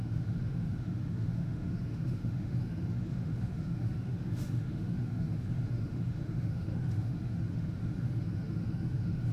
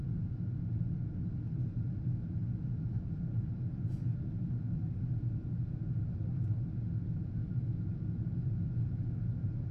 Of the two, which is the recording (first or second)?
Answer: second